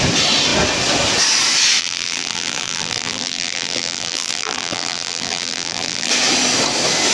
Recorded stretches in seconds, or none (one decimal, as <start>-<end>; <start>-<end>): 0.0-1.8; 6.1-7.1